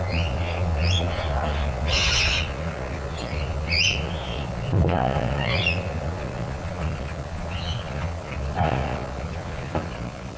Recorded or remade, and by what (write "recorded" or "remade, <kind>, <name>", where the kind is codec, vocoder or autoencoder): remade, vocoder, Vocos